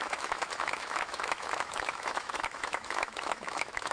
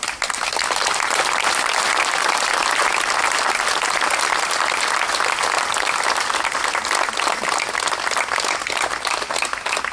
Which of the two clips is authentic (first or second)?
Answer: second